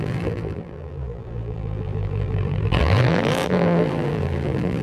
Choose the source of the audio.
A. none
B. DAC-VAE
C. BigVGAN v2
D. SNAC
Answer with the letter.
C